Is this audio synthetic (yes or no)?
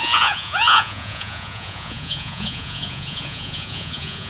yes